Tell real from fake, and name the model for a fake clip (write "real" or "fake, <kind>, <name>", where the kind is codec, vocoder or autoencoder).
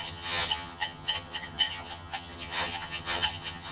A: fake, vocoder, HiFi-GAN